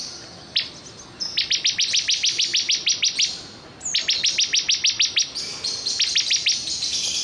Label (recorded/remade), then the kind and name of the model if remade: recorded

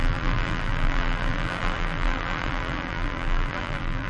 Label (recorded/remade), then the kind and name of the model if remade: remade, vocoder, BigVGAN v2